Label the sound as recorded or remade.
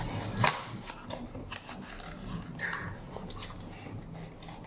recorded